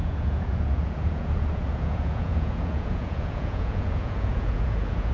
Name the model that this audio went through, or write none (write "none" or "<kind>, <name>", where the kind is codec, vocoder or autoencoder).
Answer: vocoder, Vocos